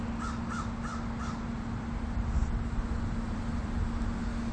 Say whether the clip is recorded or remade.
recorded